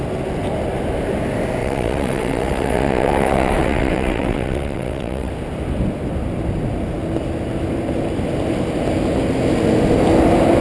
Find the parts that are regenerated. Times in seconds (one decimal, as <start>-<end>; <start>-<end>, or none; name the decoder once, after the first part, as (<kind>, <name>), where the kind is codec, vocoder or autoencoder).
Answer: 1.6-5.3 (vocoder, WaveNeXt)